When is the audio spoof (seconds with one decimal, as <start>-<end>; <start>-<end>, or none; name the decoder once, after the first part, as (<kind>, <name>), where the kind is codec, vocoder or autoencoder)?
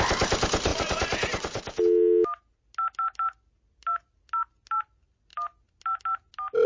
0.7-1.8 (vocoder, Vocos)